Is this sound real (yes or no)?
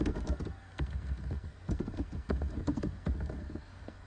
no